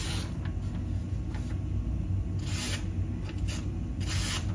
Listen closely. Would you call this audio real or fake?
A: real